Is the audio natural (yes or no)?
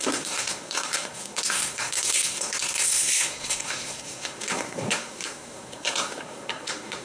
no